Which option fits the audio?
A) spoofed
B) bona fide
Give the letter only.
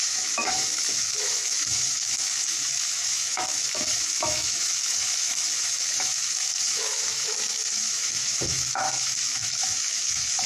A